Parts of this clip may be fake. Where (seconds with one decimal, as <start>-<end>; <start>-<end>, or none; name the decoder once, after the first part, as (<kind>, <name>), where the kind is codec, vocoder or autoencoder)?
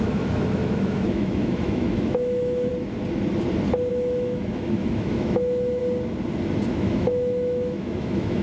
0.0-2.7 (autoencoder, DAC-VAE); 3.9-5.8; 6.7-8.4